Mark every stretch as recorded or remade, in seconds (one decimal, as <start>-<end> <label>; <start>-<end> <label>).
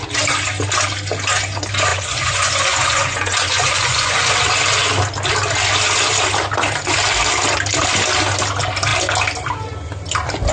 0.0-1.9 recorded; 1.9-4.3 remade; 4.3-10.5 recorded